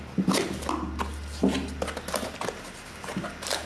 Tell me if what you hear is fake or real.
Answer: real